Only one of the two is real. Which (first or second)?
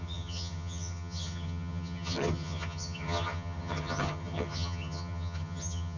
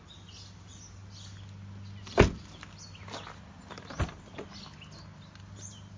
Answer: second